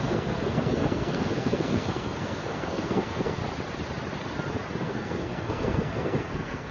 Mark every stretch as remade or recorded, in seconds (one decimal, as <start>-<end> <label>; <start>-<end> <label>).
0.0-3.4 remade; 3.4-4.8 recorded; 4.8-6.7 remade